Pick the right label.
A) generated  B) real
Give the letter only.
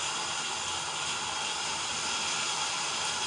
B